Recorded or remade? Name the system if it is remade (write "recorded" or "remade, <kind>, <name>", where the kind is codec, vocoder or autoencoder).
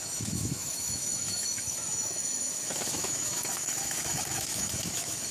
remade, autoencoder, DAC-VAE